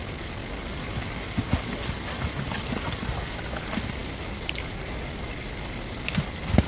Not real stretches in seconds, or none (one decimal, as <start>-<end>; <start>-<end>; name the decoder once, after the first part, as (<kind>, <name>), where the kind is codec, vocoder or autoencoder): 0.0-0.4 (vocoder, BigVGAN v2); 2.4-4.0; 4.6-6.7